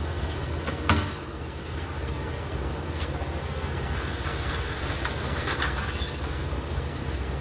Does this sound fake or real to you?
fake